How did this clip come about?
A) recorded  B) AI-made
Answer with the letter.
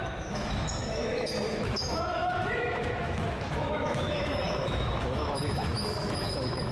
B